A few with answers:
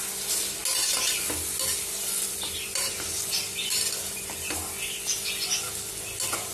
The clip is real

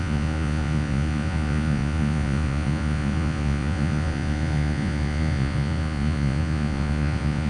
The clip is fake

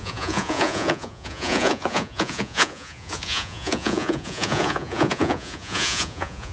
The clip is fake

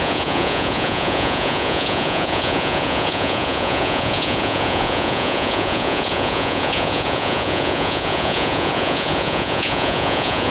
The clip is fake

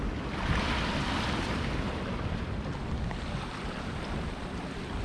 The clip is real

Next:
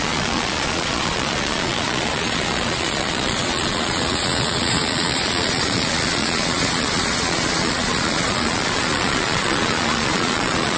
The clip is fake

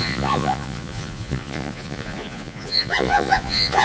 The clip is fake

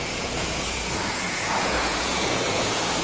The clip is fake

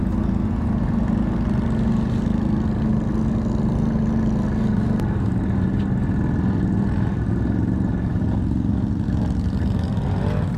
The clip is real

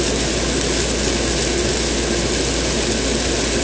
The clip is real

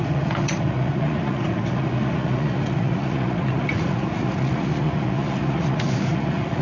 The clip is fake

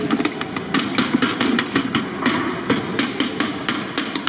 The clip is real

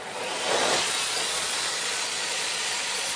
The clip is fake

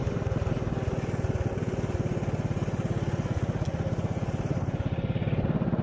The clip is real